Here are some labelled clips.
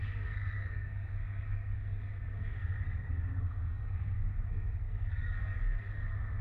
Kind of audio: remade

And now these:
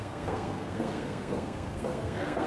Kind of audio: remade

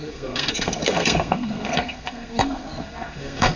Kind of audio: remade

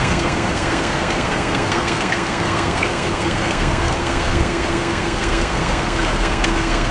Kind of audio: remade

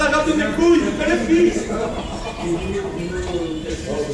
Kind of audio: recorded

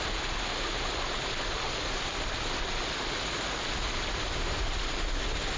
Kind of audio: recorded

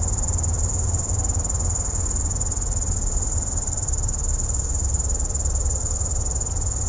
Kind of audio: recorded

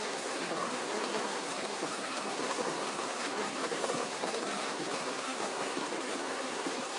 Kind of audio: remade